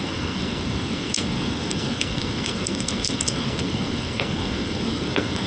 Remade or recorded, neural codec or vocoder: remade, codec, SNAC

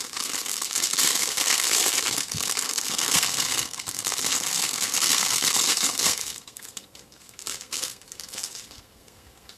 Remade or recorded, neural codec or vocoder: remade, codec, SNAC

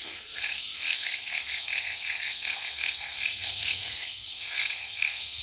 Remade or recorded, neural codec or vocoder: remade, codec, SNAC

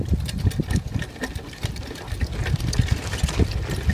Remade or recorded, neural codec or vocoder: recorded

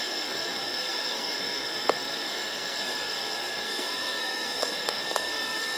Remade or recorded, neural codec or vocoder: remade, codec, SNAC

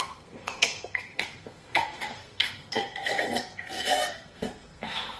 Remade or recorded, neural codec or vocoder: remade, codec, SNAC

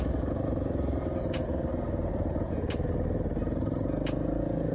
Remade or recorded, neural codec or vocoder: recorded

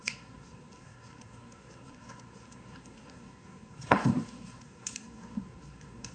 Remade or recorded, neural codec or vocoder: remade, codec, SNAC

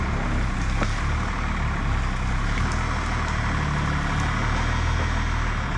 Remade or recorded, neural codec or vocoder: recorded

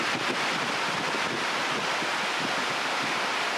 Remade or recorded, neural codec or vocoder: recorded